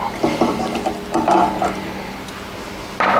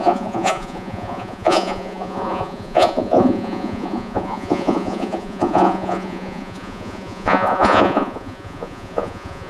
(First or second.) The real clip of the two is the first